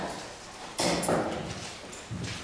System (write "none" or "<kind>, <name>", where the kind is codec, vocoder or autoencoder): none